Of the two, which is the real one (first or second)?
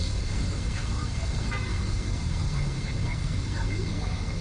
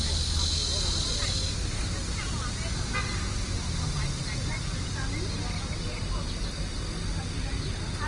second